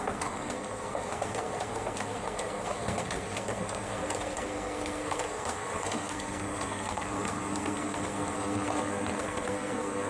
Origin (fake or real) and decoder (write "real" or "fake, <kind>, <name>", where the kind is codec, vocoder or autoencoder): fake, codec, SNAC